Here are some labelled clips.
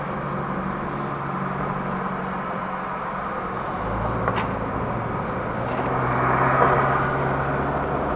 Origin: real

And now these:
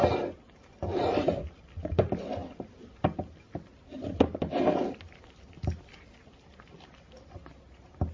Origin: real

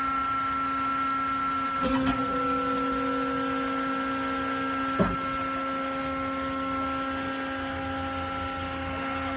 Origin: real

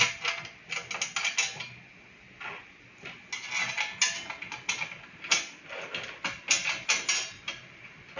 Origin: real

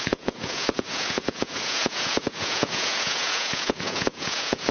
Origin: fake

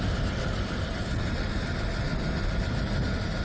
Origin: real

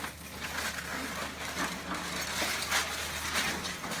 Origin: real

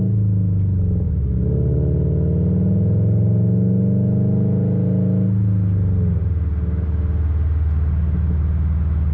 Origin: real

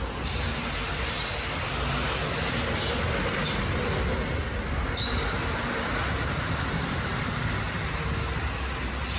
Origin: real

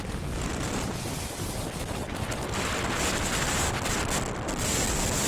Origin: real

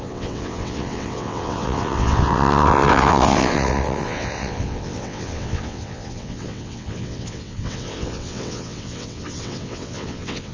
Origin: fake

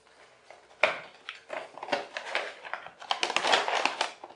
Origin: real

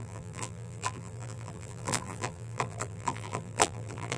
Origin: fake